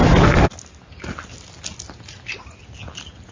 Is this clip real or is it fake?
real